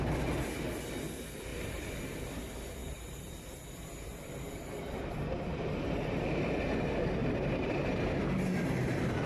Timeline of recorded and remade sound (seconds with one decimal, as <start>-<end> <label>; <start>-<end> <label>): 0.0-1.5 recorded; 1.5-2.3 remade; 2.3-2.8 recorded; 2.8-3.5 remade; 3.5-5.5 recorded; 5.5-6.4 remade; 6.4-7.2 recorded; 7.2-8.1 remade; 8.1-9.3 recorded